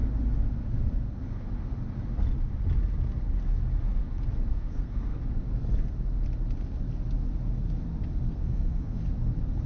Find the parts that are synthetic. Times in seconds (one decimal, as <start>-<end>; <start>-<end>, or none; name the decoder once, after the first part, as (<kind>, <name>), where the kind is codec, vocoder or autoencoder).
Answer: 4.5-5.2 (codec, SNAC); 8.3-9.0

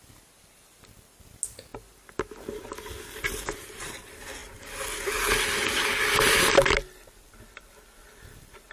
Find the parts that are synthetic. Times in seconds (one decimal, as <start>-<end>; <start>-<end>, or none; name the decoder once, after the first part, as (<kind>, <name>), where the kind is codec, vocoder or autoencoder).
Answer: none

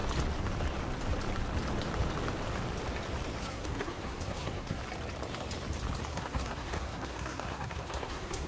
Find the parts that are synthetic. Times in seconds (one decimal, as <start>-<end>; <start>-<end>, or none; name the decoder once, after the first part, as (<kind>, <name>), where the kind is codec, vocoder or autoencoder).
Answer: 3.4-4.8 (codec, SNAC); 6.1-8.5

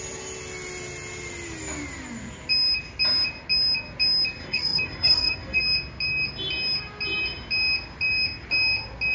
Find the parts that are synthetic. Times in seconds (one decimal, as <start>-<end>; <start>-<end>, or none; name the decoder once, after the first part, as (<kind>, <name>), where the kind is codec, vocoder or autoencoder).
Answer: 4.4-5.6 (codec, SNAC)